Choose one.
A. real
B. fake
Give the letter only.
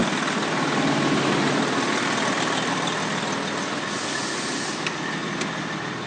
A